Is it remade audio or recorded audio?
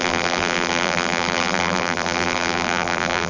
remade